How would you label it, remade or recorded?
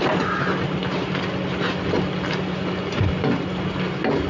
recorded